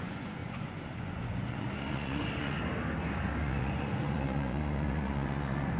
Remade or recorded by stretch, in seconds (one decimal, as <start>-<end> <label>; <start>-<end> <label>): 0.0-2.6 remade; 2.6-3.4 recorded; 3.4-5.8 remade